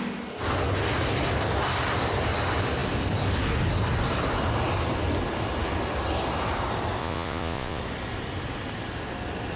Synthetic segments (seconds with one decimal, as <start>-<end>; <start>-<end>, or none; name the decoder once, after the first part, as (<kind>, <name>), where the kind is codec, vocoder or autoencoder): 7.0-7.8 (vocoder, Vocos)